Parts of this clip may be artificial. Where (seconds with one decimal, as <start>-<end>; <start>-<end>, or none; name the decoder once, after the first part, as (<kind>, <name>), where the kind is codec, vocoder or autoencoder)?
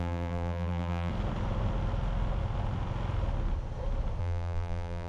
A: 0.0-1.1 (vocoder, BigVGAN v2); 4.2-5.1